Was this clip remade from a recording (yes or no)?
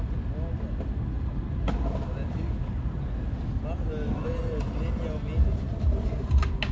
no